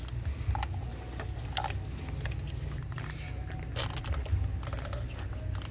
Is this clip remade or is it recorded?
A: recorded